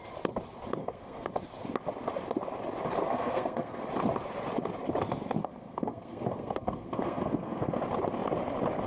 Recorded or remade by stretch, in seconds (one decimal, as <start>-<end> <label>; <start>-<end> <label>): 0.0-0.8 recorded; 0.8-1.3 remade; 1.3-3.0 recorded; 3.0-3.8 remade; 3.8-5.4 recorded; 5.4-7.8 remade; 7.8-8.9 recorded